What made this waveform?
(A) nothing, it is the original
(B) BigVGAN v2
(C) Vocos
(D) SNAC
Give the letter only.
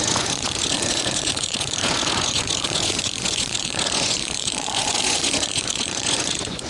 C